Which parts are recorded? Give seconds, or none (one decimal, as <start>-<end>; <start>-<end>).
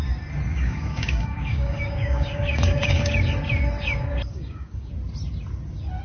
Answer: 0.0-0.5; 3.2-4.3; 4.9-6.0